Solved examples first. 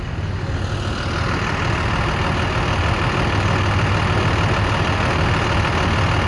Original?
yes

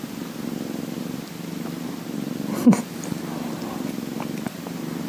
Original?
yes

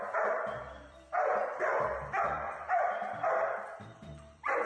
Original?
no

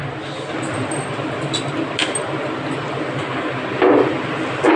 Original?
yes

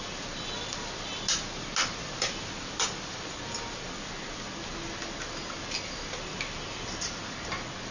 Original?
yes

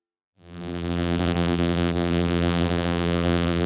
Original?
no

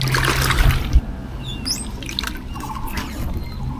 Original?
yes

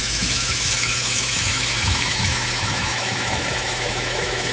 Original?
no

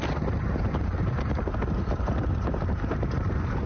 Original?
no